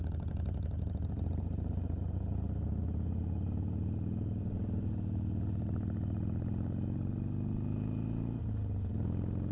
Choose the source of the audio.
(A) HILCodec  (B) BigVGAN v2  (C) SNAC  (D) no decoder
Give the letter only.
D